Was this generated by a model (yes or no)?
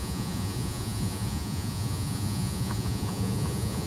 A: yes